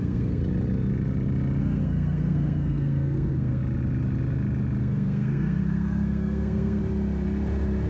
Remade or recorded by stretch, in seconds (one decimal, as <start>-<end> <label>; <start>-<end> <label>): 0.0-0.4 remade; 0.4-1.6 recorded; 1.6-3.6 remade; 3.6-4.8 recorded; 4.8-6.8 remade; 6.8-7.9 recorded